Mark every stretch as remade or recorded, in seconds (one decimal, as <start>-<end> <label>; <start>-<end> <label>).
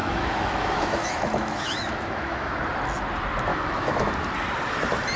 0.0-2.6 remade; 2.6-3.5 recorded; 3.5-4.1 remade; 4.1-5.2 recorded